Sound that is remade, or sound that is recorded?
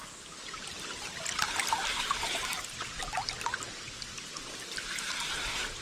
recorded